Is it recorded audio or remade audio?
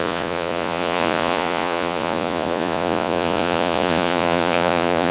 remade